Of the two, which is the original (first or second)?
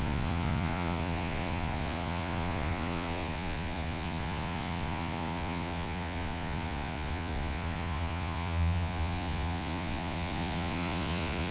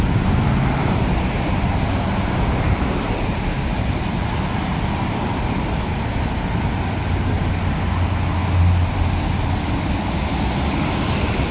second